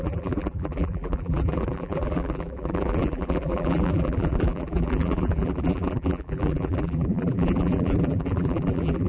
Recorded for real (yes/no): no